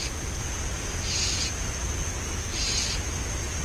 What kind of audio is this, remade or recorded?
recorded